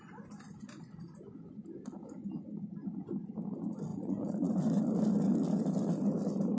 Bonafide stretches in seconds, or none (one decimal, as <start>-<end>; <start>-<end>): 0.0-3.9; 4.8-6.6